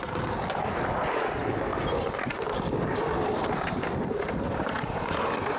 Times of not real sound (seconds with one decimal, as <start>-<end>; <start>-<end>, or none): none